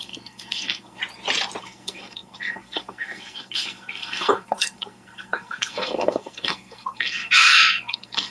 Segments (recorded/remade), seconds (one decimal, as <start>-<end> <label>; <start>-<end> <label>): 0.0-1.0 remade; 1.0-1.6 recorded; 1.6-8.3 remade

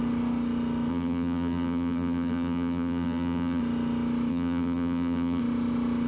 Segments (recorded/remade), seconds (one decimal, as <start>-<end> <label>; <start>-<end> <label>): 0.0-0.9 recorded; 0.9-3.6 remade; 3.6-4.3 recorded; 4.3-5.4 remade; 5.4-6.1 recorded